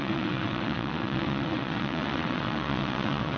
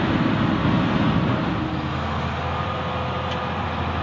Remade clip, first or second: first